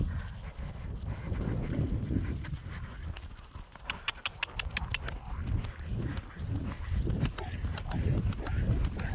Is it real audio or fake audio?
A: real